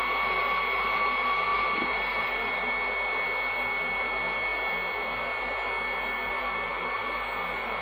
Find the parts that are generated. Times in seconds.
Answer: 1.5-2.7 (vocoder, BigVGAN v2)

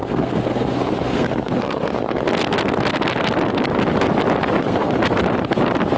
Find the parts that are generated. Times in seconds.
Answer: 0.0-2.2 (codec, SNAC); 4.6-5.0

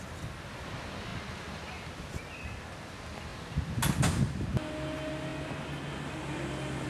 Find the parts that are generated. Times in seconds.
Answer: none

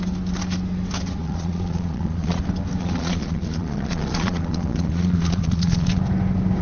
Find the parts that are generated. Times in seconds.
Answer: 1.2-2.4 (vocoder, Vocos); 2.8-6.0

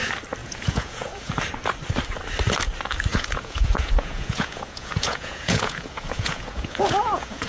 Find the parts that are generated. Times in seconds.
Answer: 0.4-1.3 (vocoder, Vocos); 3.1-7.5